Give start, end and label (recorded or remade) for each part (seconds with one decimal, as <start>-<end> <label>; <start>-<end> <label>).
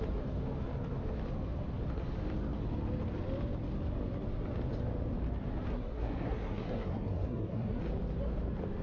0.0-5.7 recorded; 5.7-7.8 remade; 7.8-8.8 recorded